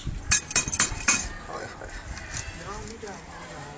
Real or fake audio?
real